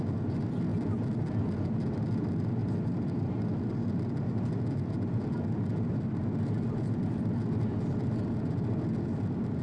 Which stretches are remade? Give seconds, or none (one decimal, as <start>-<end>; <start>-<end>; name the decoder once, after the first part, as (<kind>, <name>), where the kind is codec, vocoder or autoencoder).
none